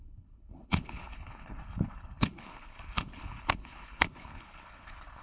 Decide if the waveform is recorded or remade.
remade